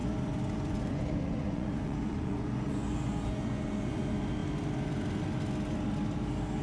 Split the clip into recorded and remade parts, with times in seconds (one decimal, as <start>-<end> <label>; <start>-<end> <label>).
0.0-4.0 remade; 4.0-6.6 recorded